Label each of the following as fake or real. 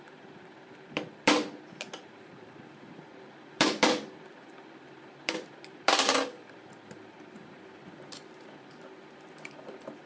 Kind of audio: fake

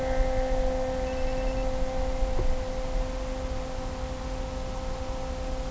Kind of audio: real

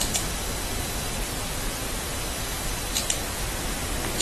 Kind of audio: real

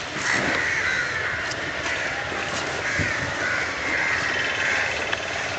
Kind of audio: real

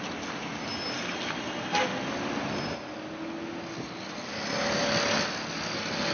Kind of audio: real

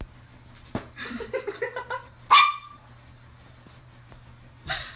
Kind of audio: real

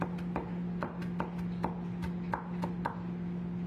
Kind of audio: real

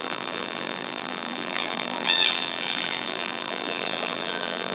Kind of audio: fake